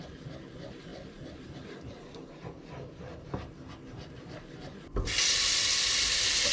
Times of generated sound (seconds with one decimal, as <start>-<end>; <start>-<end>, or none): none